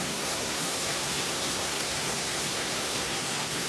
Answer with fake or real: fake